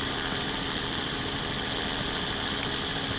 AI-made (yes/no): no